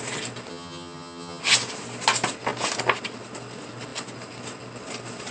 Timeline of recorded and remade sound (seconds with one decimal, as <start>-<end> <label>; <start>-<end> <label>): 0.0-0.5 recorded; 0.5-1.4 remade; 1.4-5.3 recorded